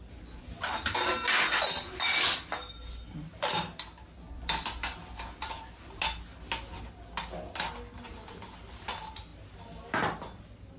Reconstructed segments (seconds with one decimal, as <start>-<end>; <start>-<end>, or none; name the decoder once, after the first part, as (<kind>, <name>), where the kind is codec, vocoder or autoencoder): none